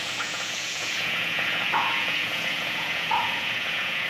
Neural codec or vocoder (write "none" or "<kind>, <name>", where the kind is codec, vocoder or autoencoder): vocoder, Vocos